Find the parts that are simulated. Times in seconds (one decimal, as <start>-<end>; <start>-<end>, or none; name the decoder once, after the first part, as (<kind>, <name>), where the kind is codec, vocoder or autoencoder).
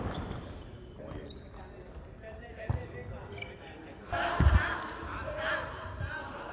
0.0-3.0 (vocoder, BigVGAN v2); 3.6-6.5